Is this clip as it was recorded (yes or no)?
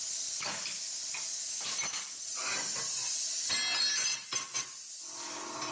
yes